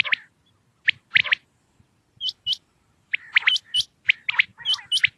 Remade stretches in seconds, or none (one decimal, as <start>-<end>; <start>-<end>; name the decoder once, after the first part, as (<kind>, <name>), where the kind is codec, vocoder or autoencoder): 1.2-4.3 (vocoder, BigVGAN v2)